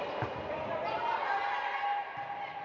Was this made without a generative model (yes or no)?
no